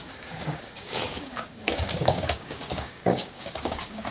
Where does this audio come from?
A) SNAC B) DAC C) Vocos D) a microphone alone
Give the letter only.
B